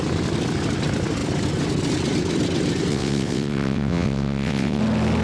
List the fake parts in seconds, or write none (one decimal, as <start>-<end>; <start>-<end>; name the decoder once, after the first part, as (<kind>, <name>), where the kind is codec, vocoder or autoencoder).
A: 2.9-4.8 (vocoder, WaveNeXt)